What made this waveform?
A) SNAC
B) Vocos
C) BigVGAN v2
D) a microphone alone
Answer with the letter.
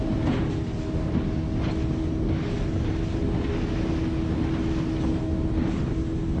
D